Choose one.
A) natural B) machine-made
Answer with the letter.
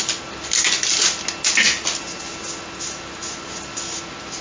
A